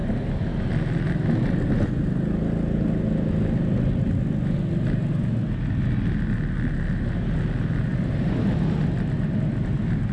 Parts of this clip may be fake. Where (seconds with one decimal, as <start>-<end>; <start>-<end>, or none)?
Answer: none